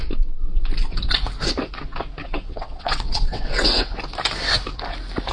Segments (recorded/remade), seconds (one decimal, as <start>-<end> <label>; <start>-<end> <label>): 0.0-2.2 recorded; 2.2-3.9 remade; 3.9-5.3 recorded